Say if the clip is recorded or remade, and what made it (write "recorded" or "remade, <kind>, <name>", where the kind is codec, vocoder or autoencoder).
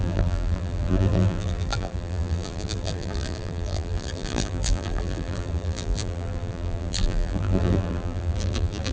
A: remade, vocoder, BigVGAN v2